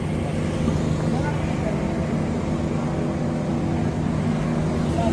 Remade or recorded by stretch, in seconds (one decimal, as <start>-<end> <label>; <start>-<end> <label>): 0.0-5.1 recorded